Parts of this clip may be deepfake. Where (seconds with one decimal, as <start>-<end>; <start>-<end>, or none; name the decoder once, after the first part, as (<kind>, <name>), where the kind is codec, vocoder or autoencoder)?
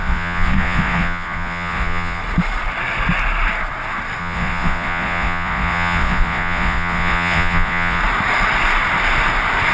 0.0-2.2 (vocoder, Vocos); 4.2-8.0